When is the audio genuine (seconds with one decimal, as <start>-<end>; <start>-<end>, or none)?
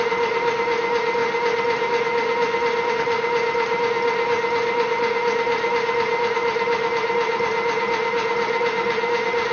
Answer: 0.0-9.5